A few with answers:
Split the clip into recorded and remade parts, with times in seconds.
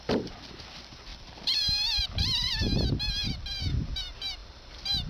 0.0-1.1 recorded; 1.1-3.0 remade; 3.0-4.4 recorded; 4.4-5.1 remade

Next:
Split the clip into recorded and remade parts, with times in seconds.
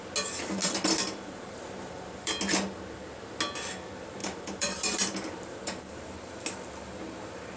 0.0-0.6 recorded; 0.6-2.3 remade; 2.3-4.2 recorded; 4.2-6.4 remade; 6.4-7.6 recorded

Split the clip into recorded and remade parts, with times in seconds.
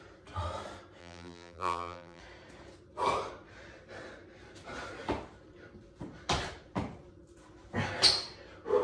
0.0-1.0 recorded; 1.0-2.2 remade; 2.2-8.8 recorded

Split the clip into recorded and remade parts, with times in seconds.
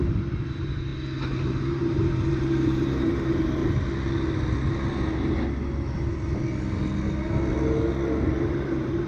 0.0-0.9 remade; 0.9-1.8 recorded; 1.8-3.6 remade; 3.6-8.5 recorded; 8.5-9.1 remade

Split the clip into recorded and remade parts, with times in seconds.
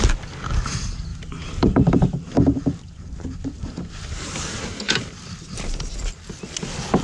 0.0-1.1 recorded; 1.1-5.0 remade; 5.0-7.0 recorded